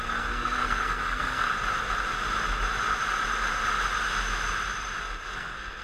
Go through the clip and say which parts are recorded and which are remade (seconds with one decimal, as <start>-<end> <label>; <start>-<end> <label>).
0.0-1.5 remade; 1.5-5.0 recorded; 5.0-5.8 remade